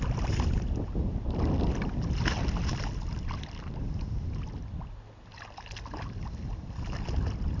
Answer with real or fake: real